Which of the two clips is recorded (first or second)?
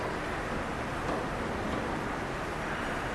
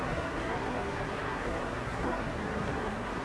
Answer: first